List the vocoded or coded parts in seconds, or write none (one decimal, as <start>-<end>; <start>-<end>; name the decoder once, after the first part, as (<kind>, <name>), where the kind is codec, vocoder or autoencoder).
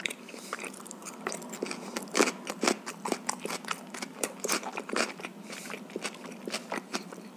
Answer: 0.0-1.0 (vocoder, BigVGAN v2); 4.1-5.3; 6.8-7.4